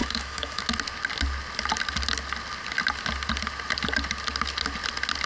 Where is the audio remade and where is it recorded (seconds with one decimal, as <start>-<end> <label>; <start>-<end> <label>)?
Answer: 0.0-0.6 remade; 0.6-5.3 recorded